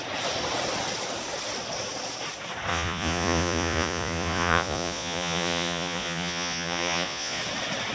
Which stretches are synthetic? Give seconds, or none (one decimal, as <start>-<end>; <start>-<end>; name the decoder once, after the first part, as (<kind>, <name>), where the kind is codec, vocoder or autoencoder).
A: 2.7-7.4 (vocoder, Vocos)